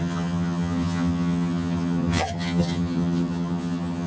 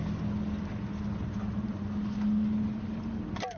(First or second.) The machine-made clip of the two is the first